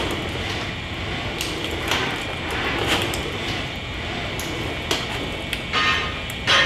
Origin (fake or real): real